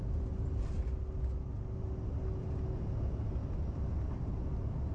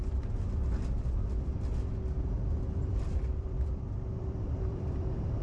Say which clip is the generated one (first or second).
second